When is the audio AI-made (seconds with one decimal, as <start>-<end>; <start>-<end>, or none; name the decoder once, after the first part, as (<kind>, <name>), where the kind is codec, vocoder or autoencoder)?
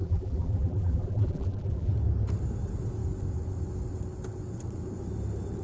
0.0-1.9 (vocoder, BigVGAN v2)